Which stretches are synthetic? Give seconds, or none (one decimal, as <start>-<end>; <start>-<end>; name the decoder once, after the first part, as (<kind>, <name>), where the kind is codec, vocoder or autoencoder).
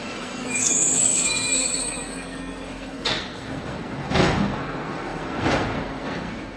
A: 0.0-6.6 (codec, SNAC)